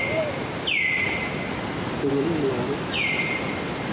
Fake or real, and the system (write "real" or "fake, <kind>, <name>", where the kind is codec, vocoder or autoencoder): real